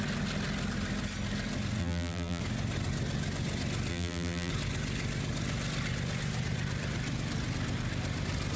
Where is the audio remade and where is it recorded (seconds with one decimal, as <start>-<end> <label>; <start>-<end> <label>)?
0.0-1.8 recorded; 1.8-2.4 remade; 2.4-3.9 recorded; 3.9-4.5 remade; 4.5-8.6 recorded